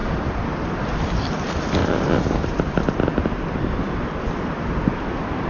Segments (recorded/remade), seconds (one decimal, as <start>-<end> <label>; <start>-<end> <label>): 0.0-1.8 recorded; 1.8-2.8 remade; 2.8-5.5 recorded